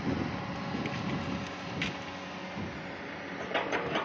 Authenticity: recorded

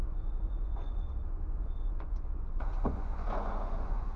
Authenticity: remade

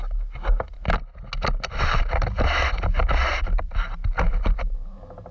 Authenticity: recorded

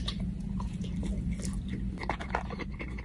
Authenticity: recorded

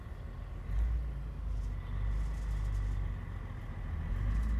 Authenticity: recorded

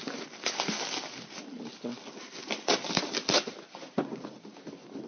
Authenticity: recorded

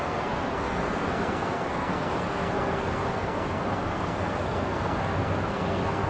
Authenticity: remade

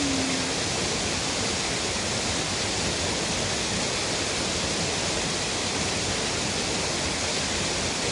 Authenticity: recorded